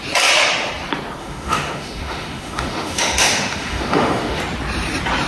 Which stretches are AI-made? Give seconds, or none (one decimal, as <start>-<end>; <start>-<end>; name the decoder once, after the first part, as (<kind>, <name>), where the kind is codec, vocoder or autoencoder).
1.2-4.4 (autoencoder, DAC-VAE)

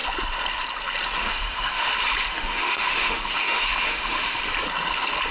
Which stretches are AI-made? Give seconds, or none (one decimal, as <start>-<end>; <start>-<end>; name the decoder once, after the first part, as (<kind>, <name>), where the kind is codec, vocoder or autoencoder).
1.2-1.9 (autoencoder, DAC-VAE); 2.3-4.4

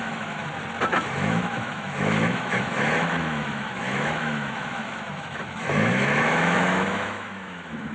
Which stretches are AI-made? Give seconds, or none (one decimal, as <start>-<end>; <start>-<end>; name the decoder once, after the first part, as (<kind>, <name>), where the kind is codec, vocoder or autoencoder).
0.0-0.4 (autoencoder, DAC-VAE); 0.9-7.9

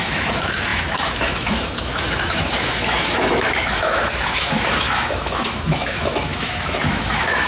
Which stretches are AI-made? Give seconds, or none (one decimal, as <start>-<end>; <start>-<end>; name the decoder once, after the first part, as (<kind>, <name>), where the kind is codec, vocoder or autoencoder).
0.0-7.5 (autoencoder, DAC-VAE)

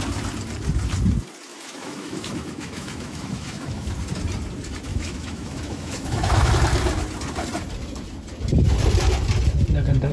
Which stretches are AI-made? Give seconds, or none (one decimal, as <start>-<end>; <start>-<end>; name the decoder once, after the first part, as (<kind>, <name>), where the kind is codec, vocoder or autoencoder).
1.5-3.9 (autoencoder, DAC-VAE); 4.9-6.5

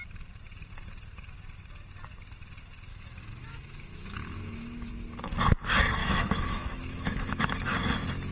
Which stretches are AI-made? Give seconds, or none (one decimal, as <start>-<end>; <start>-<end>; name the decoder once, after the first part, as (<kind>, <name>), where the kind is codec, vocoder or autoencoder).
2.9-4.9 (autoencoder, DAC-VAE); 6.0-7.5

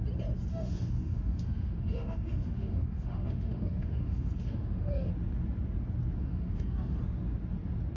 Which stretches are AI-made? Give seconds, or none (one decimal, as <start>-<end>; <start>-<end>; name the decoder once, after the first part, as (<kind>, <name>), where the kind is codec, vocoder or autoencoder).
0.5-5.1 (autoencoder, DAC-VAE); 6.2-7.0

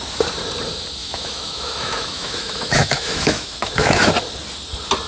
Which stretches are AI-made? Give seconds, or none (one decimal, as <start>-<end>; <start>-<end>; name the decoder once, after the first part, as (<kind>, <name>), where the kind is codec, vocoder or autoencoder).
1.0-4.1 (autoencoder, DAC-VAE)